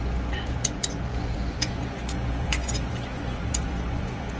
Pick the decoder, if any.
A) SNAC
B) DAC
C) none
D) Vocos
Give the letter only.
D